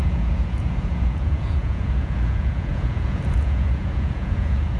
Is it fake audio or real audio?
fake